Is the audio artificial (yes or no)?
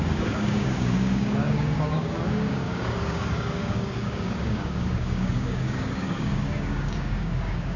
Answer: yes